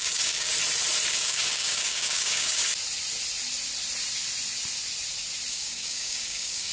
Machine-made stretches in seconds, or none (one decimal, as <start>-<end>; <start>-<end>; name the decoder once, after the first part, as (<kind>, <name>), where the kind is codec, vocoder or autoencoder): 0.0-0.5 (codec, DAC); 1.1-2.6; 5.5-6.7